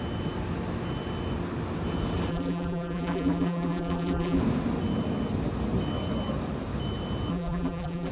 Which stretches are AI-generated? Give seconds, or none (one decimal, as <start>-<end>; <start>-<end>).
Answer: 2.3-4.4; 7.3-8.1